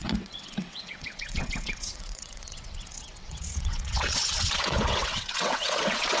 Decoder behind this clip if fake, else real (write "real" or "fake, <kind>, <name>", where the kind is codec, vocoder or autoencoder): fake, vocoder, WaveNeXt